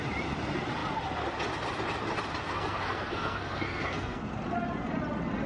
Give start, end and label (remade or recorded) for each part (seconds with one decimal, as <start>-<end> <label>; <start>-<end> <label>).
0.0-2.4 recorded; 2.4-4.3 remade; 4.3-5.5 recorded